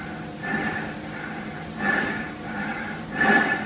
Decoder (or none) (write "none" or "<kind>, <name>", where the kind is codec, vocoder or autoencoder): vocoder, BigVGAN v2